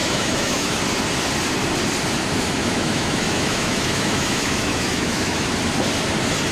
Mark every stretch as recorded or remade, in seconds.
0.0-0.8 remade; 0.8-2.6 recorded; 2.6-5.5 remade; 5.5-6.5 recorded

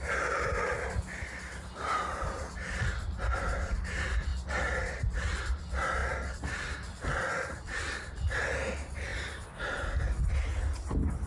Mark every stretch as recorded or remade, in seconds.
0.0-11.3 recorded

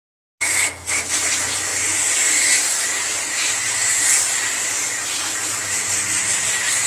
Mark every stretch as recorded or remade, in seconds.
0.0-6.9 recorded

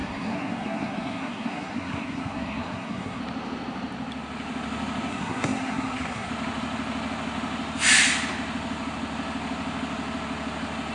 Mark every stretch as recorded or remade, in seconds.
0.0-3.2 remade; 3.2-5.1 recorded; 5.1-6.3 remade; 6.3-10.9 recorded